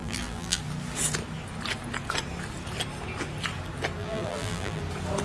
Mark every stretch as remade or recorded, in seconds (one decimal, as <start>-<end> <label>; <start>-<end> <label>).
0.0-0.6 remade; 0.6-4.0 recorded; 4.0-4.8 remade; 4.8-5.2 recorded